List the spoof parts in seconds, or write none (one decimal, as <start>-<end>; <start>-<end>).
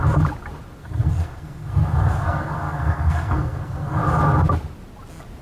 0.8-4.0